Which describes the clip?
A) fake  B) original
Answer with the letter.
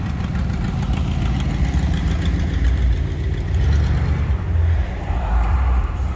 B